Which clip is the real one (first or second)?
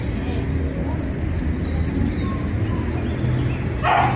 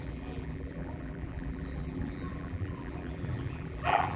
first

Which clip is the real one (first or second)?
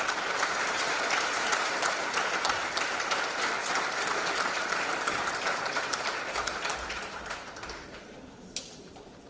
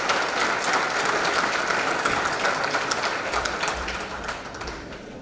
second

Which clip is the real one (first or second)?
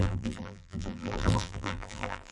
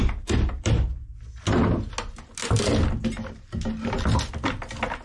second